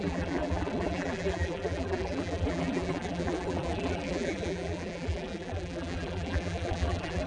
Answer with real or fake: fake